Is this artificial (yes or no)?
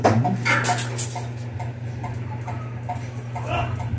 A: no